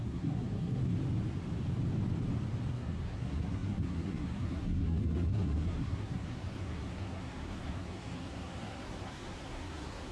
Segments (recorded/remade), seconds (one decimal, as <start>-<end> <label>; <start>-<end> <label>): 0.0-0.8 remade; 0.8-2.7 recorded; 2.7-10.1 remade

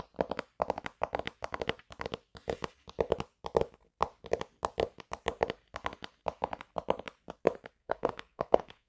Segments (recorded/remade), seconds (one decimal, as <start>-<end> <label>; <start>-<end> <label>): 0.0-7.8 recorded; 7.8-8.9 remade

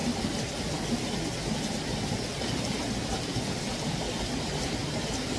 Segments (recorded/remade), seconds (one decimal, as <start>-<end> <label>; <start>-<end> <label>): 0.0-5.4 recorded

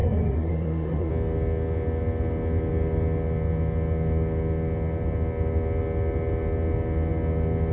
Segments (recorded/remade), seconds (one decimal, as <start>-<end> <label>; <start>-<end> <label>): 0.0-1.1 remade; 1.1-7.7 recorded

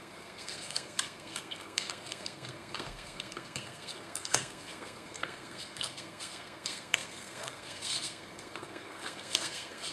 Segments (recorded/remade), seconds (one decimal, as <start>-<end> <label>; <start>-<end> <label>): 0.0-9.9 remade

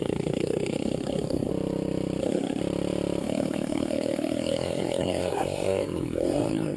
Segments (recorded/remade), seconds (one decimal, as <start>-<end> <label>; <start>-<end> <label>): 0.0-1.5 remade; 1.5-2.2 recorded; 2.2-2.6 remade; 2.6-3.2 recorded; 3.2-6.8 remade

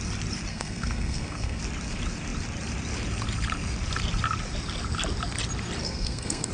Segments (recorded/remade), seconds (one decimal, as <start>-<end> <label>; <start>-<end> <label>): 0.0-0.5 recorded; 0.5-1.6 remade; 1.6-5.8 recorded; 5.8-6.5 remade